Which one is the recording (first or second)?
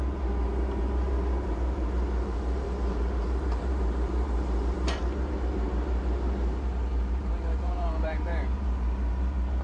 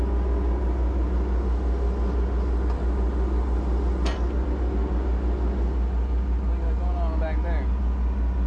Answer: second